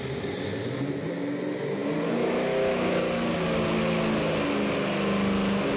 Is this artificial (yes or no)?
no